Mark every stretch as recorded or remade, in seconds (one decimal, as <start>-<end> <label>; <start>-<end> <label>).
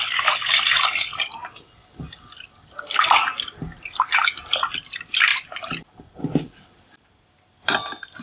0.0-8.2 recorded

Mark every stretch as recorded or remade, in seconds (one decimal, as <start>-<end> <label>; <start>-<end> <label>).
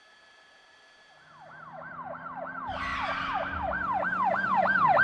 0.0-2.9 remade; 2.9-3.6 recorded; 3.6-5.0 remade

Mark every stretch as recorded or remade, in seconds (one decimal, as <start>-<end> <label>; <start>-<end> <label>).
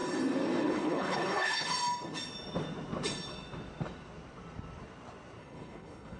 0.0-0.6 recorded; 0.6-1.7 remade; 1.7-5.4 recorded; 5.4-6.2 remade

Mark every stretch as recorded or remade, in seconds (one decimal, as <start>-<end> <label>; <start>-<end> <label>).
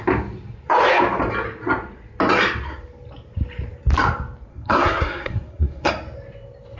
0.0-4.5 recorded; 4.5-5.9 remade; 5.9-6.8 recorded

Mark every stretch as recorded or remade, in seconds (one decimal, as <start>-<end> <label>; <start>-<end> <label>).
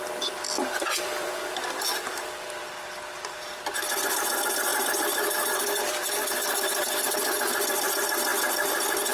0.0-2.6 remade; 2.6-3.3 recorded; 3.3-4.7 remade; 4.7-5.5 recorded; 5.5-8.3 remade; 8.3-9.1 recorded